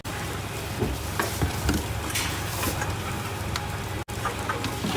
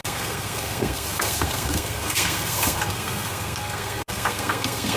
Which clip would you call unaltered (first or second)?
first